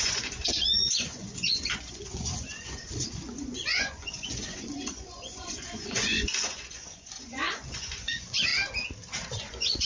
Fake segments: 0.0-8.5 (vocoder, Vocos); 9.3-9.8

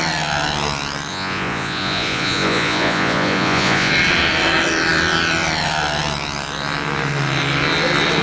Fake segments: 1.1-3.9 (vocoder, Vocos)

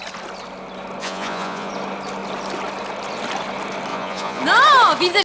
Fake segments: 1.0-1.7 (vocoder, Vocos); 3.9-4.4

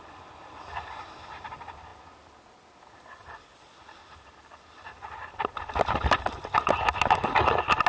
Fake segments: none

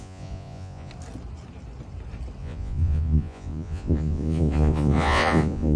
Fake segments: 0.0-0.9 (vocoder, Vocos); 2.4-5.8